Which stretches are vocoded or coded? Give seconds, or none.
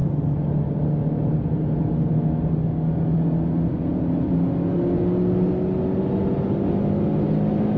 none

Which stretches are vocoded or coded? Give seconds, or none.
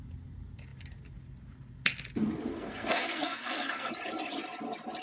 2.5-3.9 (codec, SNAC)